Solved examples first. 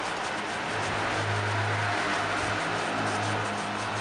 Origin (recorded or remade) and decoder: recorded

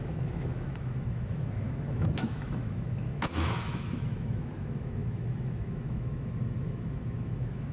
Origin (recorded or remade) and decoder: remade, autoencoder, DAC-VAE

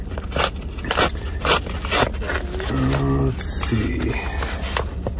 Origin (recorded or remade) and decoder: recorded